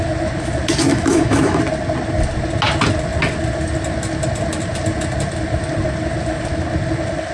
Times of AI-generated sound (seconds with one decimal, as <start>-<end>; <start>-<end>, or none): 0.9-1.6